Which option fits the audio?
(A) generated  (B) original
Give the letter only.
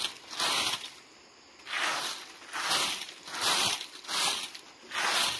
B